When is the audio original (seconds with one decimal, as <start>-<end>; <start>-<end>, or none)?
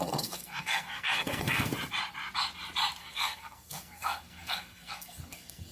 1.7-3.0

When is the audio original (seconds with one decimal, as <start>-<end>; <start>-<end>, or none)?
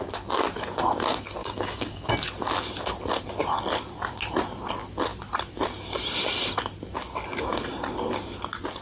0.0-1.4; 2.1-8.8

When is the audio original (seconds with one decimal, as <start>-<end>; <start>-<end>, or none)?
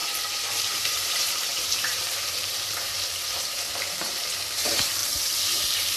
none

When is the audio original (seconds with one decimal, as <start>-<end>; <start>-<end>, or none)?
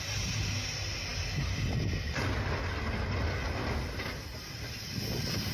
0.0-5.5